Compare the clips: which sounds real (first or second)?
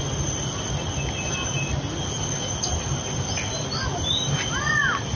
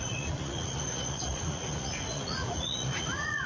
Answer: first